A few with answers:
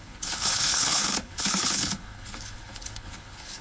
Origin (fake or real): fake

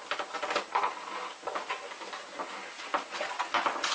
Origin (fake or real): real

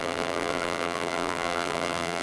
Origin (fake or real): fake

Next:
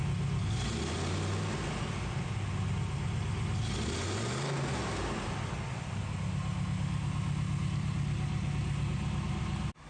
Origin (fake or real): real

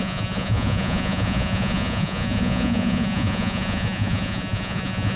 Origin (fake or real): fake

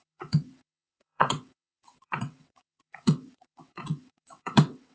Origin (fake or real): fake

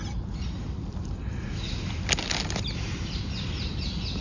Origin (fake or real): real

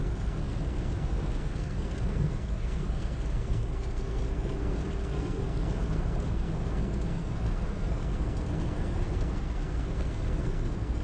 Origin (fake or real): fake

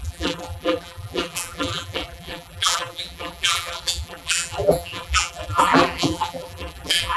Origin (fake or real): fake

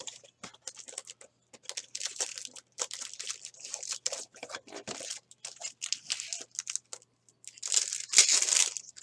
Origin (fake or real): real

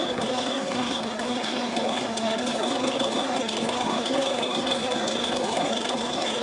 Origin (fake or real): fake